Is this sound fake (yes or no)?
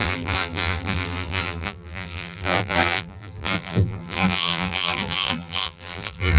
yes